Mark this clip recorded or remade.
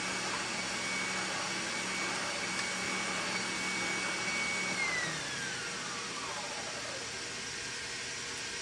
recorded